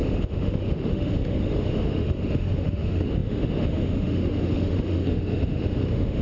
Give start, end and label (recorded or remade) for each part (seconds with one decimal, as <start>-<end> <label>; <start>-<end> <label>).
0.0-6.2 remade